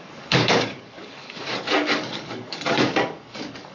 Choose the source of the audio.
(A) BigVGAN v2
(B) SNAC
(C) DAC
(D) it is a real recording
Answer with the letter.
C